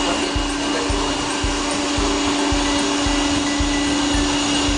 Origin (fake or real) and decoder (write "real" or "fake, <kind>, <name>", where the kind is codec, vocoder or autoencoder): real